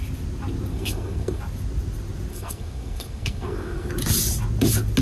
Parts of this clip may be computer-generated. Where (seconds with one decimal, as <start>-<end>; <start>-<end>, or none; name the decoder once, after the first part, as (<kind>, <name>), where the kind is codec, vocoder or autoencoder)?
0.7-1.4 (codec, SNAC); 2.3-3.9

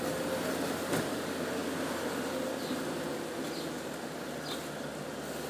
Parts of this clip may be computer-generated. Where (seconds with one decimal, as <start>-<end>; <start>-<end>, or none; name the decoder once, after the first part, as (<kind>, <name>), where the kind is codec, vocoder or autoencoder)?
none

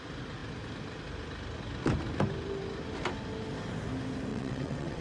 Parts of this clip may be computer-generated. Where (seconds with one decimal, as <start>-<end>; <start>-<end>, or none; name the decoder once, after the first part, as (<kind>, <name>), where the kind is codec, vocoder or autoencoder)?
4.3-5.0 (vocoder, WaveNeXt)

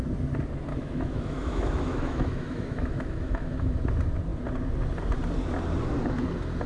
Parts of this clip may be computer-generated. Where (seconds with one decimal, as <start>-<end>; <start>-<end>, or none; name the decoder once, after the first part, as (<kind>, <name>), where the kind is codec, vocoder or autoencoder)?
0.7-3.7 (autoencoder, DAC-VAE)